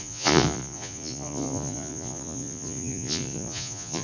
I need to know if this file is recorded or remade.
remade